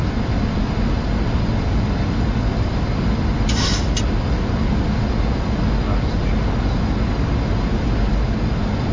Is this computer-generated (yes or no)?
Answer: no